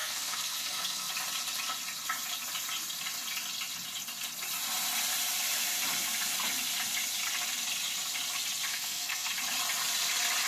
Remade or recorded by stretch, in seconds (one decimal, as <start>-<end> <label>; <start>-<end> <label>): 0.0-1.1 remade; 1.1-8.7 recorded; 8.7-9.3 remade; 9.3-10.5 recorded

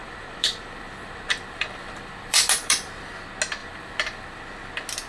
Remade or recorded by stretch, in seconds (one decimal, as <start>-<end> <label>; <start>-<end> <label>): 0.0-3.1 remade; 3.1-3.6 recorded; 3.6-4.4 remade; 4.4-5.1 recorded

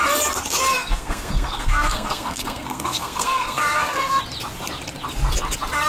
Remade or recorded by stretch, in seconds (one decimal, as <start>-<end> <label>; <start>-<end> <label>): 0.0-0.7 recorded; 0.7-4.2 remade; 4.2-5.9 recorded